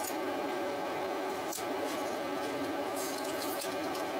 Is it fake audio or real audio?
real